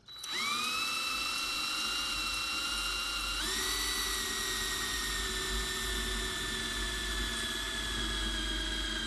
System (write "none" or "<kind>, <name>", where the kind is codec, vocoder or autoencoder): none